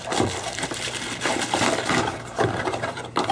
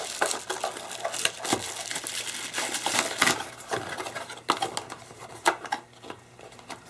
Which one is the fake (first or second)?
first